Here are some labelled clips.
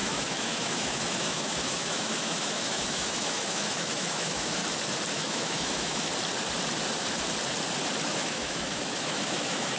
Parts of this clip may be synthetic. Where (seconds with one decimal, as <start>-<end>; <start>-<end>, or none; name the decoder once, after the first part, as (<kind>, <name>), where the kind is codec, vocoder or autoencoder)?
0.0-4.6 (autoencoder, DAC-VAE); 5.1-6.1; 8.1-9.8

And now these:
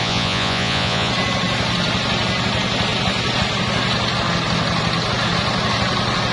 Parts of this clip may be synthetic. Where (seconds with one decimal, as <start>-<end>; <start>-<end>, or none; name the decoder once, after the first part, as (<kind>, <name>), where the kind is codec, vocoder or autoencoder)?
0.0-1.1 (vocoder, Vocos)

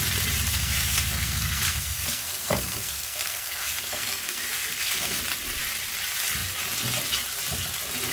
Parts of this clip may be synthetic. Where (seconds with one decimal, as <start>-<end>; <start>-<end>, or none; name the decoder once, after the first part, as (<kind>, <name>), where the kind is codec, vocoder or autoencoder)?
0.5-5.2 (codec, SNAC)

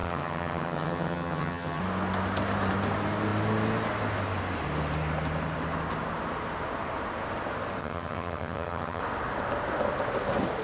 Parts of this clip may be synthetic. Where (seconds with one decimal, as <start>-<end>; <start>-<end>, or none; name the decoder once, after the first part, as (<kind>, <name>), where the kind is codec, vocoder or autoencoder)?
0.0-1.8 (vocoder, HiFi-GAN); 7.8-9.0